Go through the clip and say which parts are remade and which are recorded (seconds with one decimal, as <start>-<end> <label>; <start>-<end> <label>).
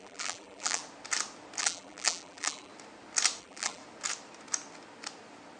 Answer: 0.0-0.8 remade; 0.8-1.6 recorded; 1.6-2.7 remade; 2.7-3.4 recorded; 3.4-3.8 remade; 3.8-5.6 recorded